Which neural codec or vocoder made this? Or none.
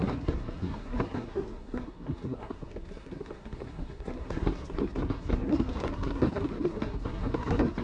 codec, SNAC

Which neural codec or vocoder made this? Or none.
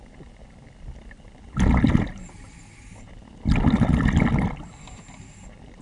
none